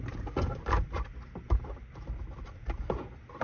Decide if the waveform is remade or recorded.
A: remade